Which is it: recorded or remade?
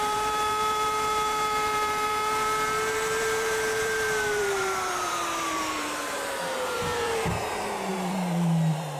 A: remade